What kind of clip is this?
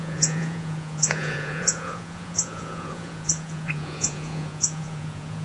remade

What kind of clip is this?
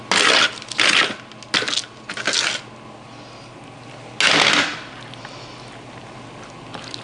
recorded